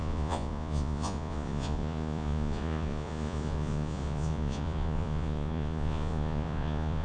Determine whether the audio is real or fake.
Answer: fake